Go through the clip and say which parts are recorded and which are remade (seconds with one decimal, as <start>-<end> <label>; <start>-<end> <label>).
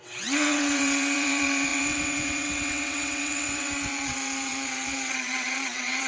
0.0-6.1 remade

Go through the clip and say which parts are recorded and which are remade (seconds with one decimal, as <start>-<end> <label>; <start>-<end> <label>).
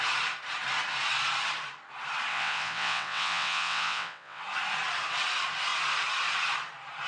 0.0-2.3 recorded; 2.3-4.4 remade; 4.4-7.1 recorded